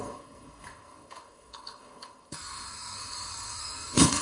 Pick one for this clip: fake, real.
fake